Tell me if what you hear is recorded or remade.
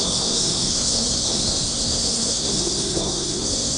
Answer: remade